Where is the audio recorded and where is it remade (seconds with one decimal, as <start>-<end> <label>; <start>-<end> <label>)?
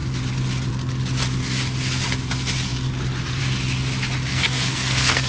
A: 0.0-4.3 recorded; 4.3-5.3 remade